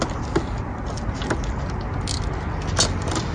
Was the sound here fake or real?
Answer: real